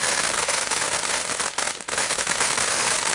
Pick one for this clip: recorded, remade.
remade